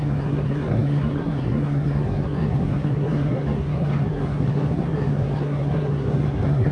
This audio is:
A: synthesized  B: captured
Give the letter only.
A